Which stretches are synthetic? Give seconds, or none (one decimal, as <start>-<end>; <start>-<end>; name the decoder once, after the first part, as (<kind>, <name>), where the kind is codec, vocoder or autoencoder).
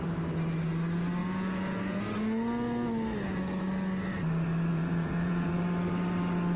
1.2-2.0 (vocoder, Vocos); 4.7-5.5